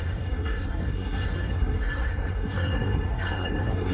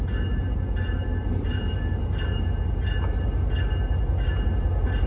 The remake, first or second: first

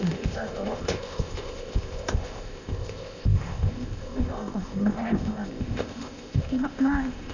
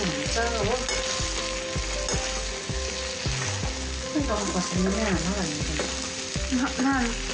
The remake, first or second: first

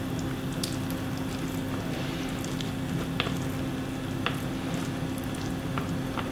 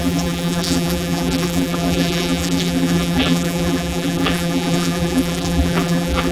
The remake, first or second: second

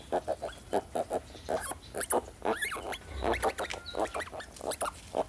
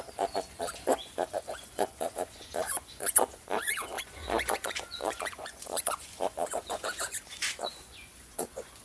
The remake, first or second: second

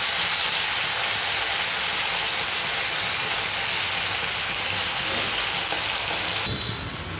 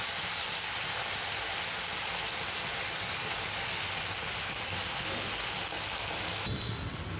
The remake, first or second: second